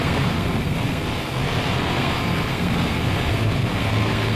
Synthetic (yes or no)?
yes